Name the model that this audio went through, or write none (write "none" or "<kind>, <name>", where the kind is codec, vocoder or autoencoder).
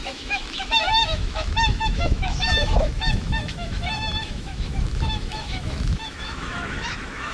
autoencoder, DAC-VAE